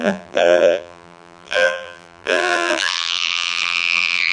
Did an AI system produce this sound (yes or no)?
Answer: yes